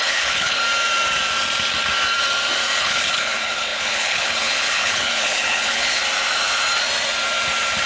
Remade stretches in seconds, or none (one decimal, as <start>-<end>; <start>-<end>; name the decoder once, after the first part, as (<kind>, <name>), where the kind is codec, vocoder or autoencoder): 0.0-0.6 (codec, HILCodec); 2.8-6.0